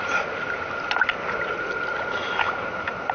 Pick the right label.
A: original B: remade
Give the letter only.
A